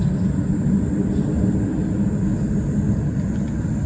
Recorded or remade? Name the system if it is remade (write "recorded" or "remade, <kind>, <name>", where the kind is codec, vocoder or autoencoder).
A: recorded